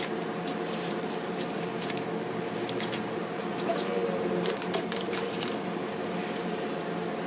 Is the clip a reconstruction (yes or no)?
yes